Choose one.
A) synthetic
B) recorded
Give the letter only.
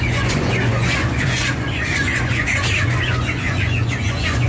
A